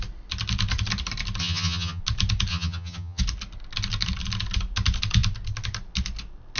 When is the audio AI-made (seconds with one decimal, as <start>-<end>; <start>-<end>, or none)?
1.4-2.0; 2.5-3.2